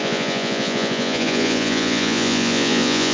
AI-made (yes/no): yes